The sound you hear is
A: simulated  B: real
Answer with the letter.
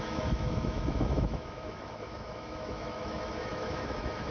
A